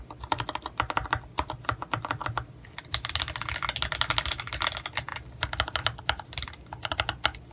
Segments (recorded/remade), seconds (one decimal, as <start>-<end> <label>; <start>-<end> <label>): 0.0-7.5 recorded